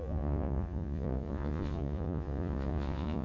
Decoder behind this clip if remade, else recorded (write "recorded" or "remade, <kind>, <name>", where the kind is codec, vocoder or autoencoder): remade, vocoder, Vocos